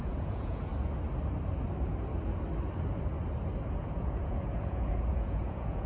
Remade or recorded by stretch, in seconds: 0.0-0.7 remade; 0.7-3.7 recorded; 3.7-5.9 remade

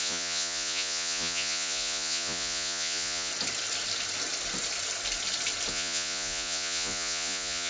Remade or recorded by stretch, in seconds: 0.0-3.3 remade; 3.3-5.7 recorded; 5.7-7.7 remade

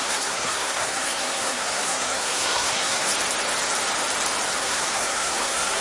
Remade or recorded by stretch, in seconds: 0.0-3.1 remade; 3.1-4.6 recorded; 4.6-5.8 remade

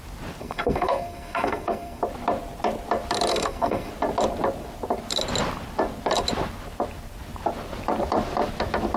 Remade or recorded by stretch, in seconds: 0.0-0.4 recorded; 0.4-2.0 remade; 2.0-3.3 recorded; 3.3-3.9 remade; 3.9-9.0 recorded

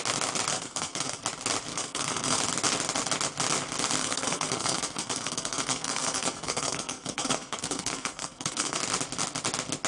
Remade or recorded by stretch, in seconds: 0.0-0.5 recorded; 0.5-1.2 remade; 1.2-1.7 recorded; 1.7-2.4 remade; 2.4-4.0 recorded; 4.0-8.8 remade; 8.8-9.9 recorded

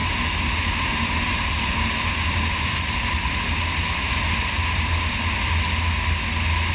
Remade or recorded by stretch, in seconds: 0.0-6.7 recorded

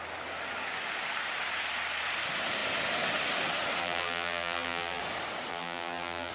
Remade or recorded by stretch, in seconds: 0.0-3.8 recorded; 3.8-5.0 remade; 5.0-5.5 recorded; 5.5-6.3 remade